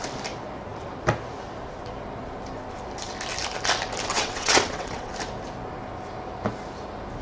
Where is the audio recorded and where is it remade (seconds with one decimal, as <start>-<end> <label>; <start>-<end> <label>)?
0.0-4.1 recorded; 4.1-5.1 remade; 5.1-7.2 recorded